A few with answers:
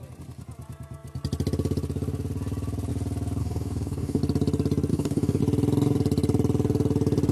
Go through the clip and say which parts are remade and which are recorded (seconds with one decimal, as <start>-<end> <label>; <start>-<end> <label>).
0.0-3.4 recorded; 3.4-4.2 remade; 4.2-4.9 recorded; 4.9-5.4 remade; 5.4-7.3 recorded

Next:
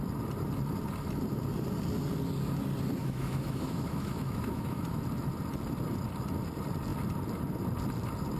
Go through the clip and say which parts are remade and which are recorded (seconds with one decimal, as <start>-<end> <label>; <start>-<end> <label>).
0.0-3.0 recorded; 3.0-5.0 remade; 5.0-8.4 recorded

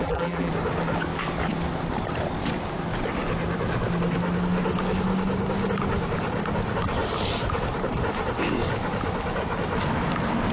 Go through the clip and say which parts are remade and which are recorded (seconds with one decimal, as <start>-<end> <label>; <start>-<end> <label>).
0.0-0.5 remade; 0.5-10.5 recorded